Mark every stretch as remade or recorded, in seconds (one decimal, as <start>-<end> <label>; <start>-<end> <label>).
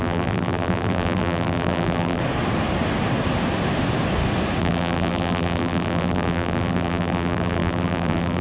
0.0-2.2 remade; 2.2-4.6 recorded; 4.6-8.4 remade